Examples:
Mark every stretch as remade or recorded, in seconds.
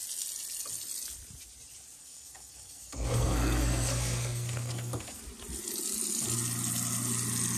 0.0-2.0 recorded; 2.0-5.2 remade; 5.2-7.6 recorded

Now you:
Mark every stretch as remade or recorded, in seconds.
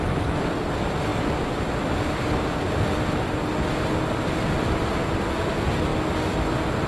0.0-6.9 recorded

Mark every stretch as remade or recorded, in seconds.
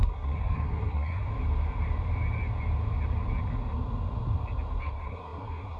0.0-1.3 remade; 1.3-4.8 recorded; 4.8-5.8 remade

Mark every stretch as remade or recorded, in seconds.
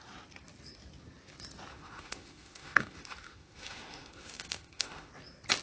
0.0-1.7 recorded; 1.7-5.1 remade; 5.1-5.6 recorded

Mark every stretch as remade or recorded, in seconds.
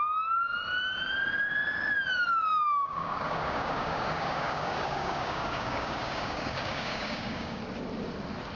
0.0-2.5 recorded; 2.5-7.6 remade; 7.6-8.6 recorded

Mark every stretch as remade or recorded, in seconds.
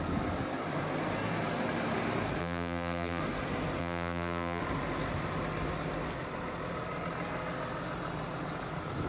0.0-2.4 recorded; 2.4-3.2 remade; 3.2-3.8 recorded; 3.8-4.6 remade; 4.6-9.1 recorded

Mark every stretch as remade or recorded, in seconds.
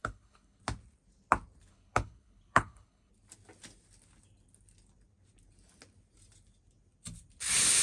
0.0-0.6 remade; 0.6-1.7 recorded; 1.7-3.1 remade; 3.1-7.8 recorded